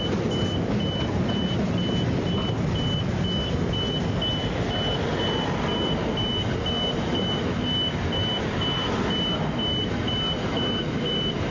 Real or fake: real